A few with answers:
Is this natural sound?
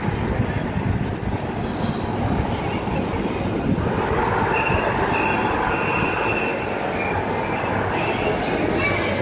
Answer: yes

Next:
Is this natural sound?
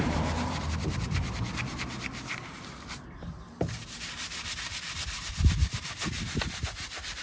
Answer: no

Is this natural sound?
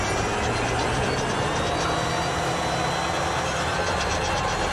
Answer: yes